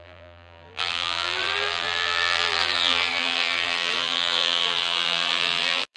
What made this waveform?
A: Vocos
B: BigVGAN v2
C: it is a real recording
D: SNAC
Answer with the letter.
B